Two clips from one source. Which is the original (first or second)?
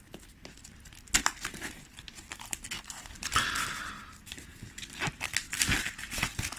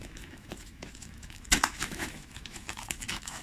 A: first